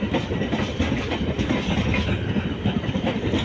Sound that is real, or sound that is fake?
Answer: real